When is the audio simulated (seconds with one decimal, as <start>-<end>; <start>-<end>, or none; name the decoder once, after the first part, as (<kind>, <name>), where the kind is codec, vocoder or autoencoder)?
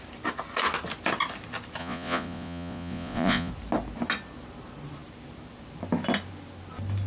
1.8-3.5 (vocoder, Vocos)